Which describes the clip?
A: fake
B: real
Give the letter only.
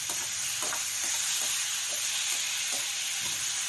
B